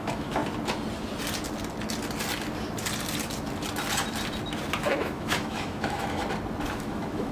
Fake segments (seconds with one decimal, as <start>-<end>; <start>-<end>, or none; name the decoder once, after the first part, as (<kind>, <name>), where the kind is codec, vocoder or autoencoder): 0.0-0.4 (autoencoder, DAC-VAE); 4.8-6.2; 6.7-7.3